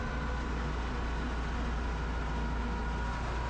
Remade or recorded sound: recorded